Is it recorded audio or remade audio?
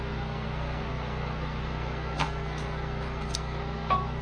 remade